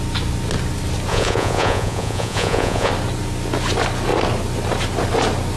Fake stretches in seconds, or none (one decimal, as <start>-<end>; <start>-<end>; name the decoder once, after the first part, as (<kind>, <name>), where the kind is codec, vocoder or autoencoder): 1.1-2.9 (vocoder, Vocos)